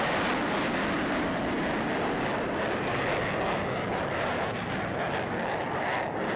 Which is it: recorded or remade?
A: recorded